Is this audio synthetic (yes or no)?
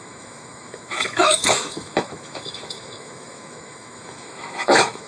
yes